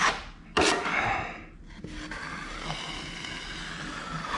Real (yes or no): yes